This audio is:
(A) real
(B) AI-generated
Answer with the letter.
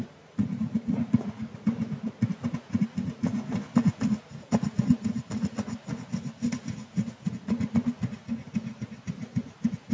B